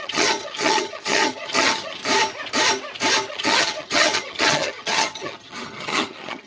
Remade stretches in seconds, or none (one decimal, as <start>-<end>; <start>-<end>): 0.0-2.0; 3.3-6.5